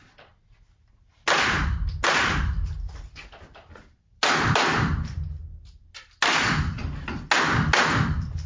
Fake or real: real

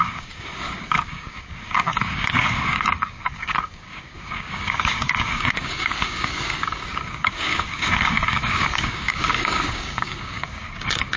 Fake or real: fake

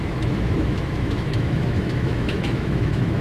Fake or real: fake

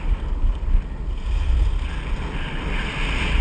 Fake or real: real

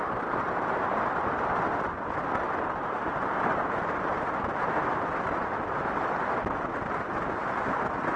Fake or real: real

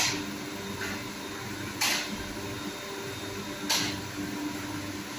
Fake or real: real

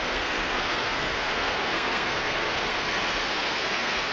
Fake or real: fake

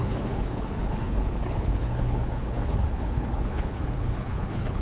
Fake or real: fake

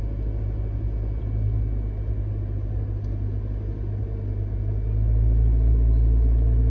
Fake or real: real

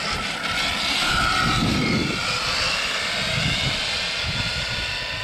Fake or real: real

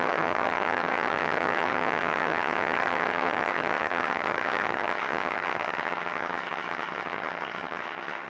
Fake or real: fake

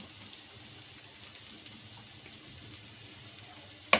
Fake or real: real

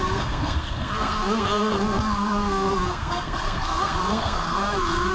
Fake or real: fake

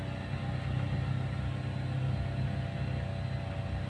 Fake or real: real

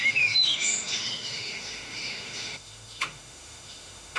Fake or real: fake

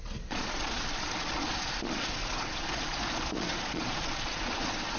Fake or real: fake